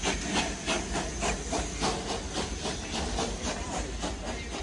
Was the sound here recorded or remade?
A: recorded